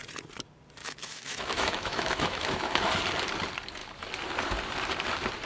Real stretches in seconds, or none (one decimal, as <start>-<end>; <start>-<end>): 0.0-0.8; 2.8-5.5